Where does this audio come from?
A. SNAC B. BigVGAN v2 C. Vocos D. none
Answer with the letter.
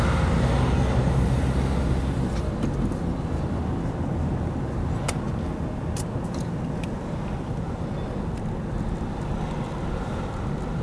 D